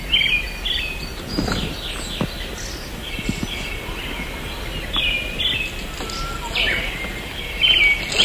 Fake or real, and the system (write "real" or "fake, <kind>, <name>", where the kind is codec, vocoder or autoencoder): real